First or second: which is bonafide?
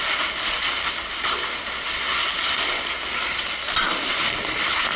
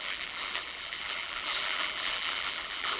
first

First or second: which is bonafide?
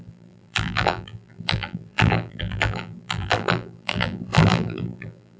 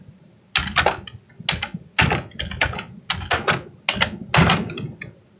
second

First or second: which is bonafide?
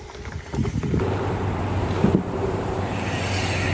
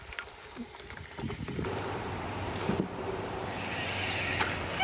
first